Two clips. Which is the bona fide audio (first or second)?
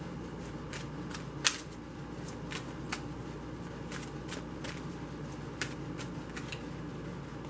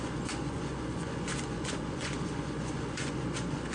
first